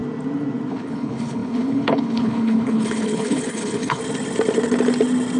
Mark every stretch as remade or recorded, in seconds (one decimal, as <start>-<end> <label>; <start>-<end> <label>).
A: 0.0-0.7 recorded; 0.7-4.0 remade; 4.0-5.4 recorded